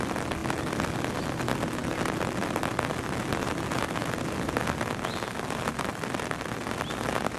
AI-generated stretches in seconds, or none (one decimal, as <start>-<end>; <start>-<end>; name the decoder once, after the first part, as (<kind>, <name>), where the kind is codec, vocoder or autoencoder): none